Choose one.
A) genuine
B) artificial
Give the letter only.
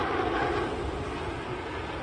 A